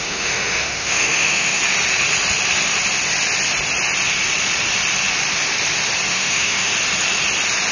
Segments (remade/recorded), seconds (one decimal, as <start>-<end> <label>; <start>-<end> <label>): 0.0-1.6 remade; 1.6-6.1 recorded; 6.1-6.7 remade; 6.7-7.7 recorded